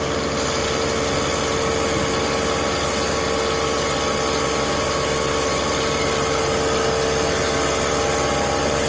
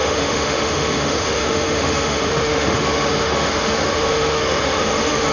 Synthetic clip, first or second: second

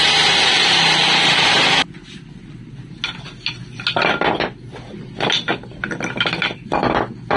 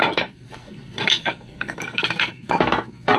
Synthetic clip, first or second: second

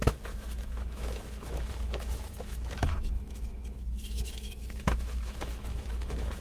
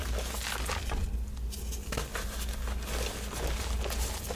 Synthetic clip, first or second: first